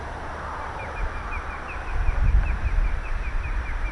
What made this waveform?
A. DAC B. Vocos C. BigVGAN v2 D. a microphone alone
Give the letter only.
D